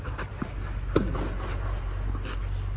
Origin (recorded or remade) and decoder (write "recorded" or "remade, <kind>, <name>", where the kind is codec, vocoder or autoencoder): recorded